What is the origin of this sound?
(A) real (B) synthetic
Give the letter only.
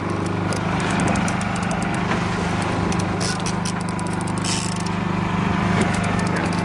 A